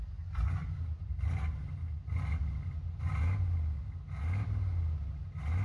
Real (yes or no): yes